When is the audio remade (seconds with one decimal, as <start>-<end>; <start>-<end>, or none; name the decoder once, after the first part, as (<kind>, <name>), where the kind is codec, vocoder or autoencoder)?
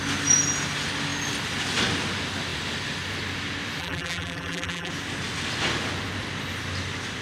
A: 3.8-4.9 (vocoder, BigVGAN v2)